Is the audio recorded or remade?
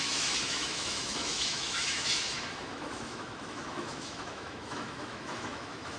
remade